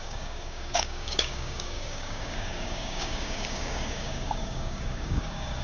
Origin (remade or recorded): remade